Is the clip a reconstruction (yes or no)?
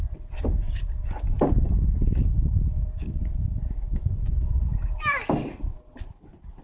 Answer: no